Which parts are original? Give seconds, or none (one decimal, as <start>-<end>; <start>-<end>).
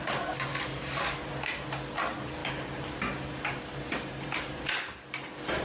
0.0-0.5; 1.2-5.6